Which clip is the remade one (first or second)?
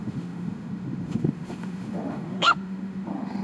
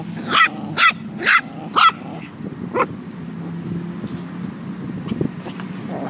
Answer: first